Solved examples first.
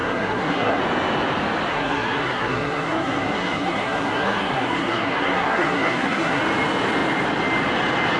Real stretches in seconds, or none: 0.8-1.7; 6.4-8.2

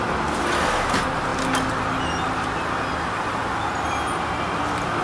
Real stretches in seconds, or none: 0.0-5.0

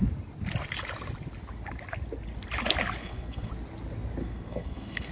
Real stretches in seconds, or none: 0.0-3.0; 3.5-4.2